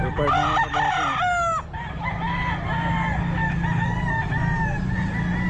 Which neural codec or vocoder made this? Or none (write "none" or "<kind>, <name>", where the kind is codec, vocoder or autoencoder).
none